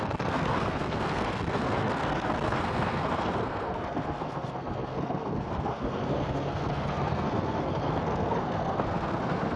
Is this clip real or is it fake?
fake